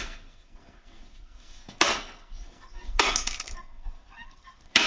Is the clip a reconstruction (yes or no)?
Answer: yes